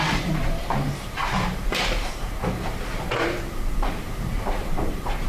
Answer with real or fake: fake